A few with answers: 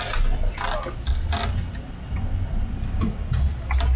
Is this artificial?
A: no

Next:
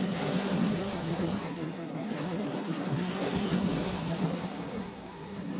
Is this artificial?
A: yes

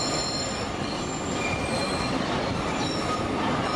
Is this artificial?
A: no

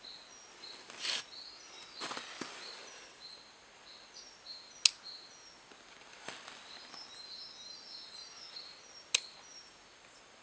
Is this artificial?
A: no